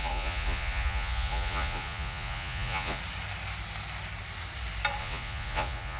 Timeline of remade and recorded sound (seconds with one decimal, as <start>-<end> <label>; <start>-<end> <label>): 0.0-3.0 remade; 3.0-5.0 recorded; 5.0-6.0 remade